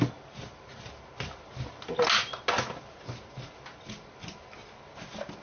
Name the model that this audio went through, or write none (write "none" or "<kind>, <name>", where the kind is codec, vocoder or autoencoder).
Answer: none